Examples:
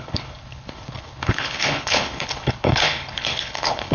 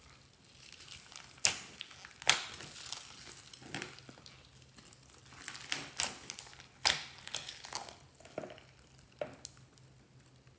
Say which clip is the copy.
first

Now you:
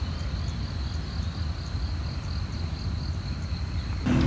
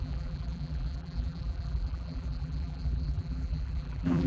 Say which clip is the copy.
second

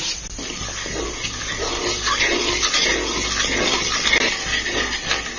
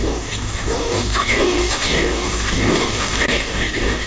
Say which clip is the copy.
second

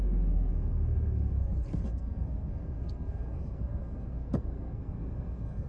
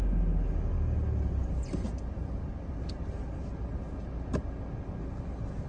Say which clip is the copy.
first